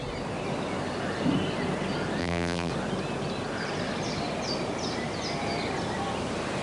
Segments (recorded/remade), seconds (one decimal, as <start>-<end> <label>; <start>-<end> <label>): 0.0-2.2 recorded; 2.2-2.7 remade; 2.7-6.6 recorded